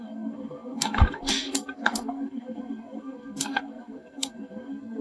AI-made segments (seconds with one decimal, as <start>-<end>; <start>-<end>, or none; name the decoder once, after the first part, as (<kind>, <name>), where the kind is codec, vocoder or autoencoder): 0.0-5.0 (codec, SNAC)